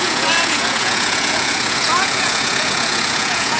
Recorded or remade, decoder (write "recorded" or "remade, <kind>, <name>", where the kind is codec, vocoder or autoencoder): remade, vocoder, Vocos